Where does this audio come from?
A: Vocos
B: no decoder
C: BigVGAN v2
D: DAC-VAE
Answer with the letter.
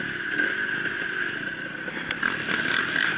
B